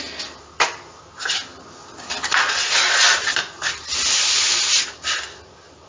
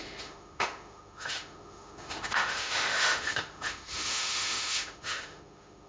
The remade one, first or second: second